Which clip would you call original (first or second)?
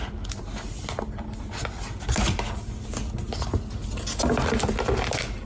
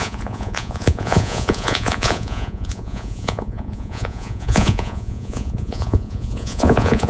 first